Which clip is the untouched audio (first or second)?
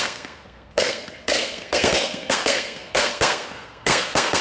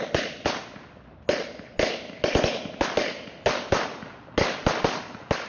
second